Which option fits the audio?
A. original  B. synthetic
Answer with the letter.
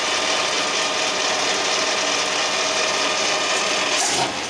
A